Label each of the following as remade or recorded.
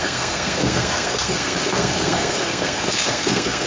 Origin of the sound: remade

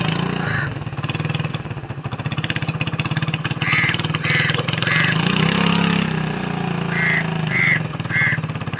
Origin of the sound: recorded